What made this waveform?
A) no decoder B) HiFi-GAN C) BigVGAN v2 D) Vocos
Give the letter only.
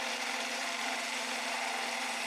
C